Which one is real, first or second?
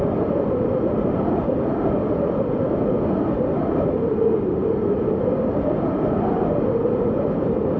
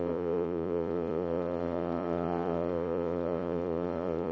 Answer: first